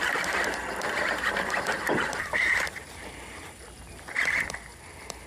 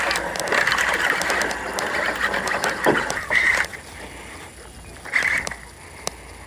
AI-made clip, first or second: first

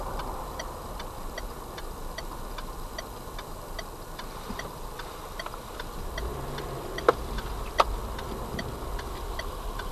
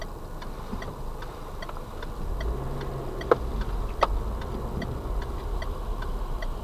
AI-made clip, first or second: first